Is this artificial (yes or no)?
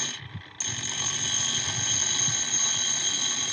no